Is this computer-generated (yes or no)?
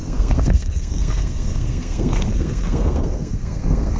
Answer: yes